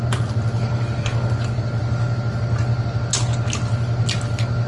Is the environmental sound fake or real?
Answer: real